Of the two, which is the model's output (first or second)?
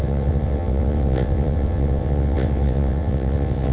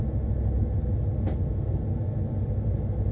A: first